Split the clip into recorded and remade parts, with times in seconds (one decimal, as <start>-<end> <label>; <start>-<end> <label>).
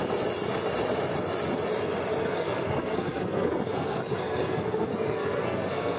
0.0-2.2 recorded; 2.2-6.0 remade